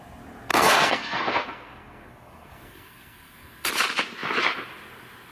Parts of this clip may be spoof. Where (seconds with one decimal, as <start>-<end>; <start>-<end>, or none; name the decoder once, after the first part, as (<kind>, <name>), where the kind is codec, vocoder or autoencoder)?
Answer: 0.5-3.7 (codec, SNAC)